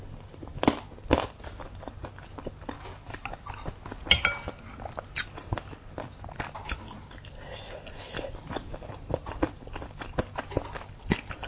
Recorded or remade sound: recorded